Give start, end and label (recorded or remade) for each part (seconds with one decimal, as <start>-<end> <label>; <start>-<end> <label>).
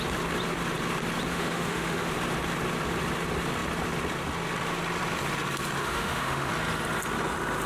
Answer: 0.0-1.3 recorded; 1.3-2.1 remade; 2.1-5.8 recorded; 5.8-6.5 remade; 6.5-7.7 recorded